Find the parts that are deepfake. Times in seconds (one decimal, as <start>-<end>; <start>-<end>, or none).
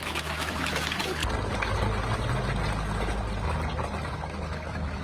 0.0-1.2; 4.1-5.0